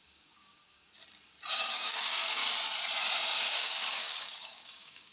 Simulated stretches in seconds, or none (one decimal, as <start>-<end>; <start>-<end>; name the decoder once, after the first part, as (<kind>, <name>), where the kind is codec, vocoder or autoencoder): 0.0-1.0 (codec, DAC); 1.5-2.4; 3.5-5.1